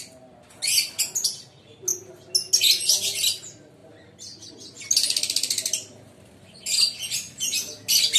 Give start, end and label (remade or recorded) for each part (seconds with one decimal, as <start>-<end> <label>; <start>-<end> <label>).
0.0-8.2 recorded